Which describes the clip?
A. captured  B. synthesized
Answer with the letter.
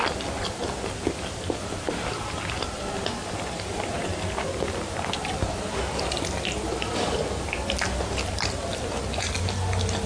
A